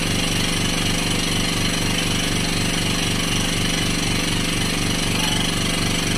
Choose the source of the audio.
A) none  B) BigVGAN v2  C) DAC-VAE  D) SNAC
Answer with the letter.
A